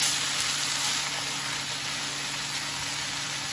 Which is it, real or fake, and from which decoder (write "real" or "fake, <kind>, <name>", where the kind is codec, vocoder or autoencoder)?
real